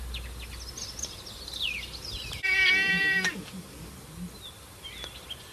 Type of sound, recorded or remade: recorded